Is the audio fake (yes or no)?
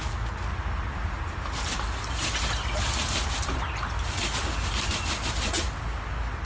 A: no